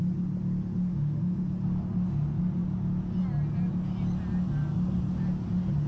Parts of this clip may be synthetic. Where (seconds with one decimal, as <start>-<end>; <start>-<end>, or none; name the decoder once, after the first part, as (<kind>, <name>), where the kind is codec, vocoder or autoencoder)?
0.9-1.4 (autoencoder, DAC-VAE)